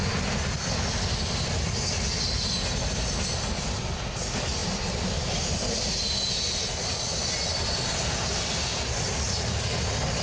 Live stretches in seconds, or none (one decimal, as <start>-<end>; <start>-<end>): 0.0-10.2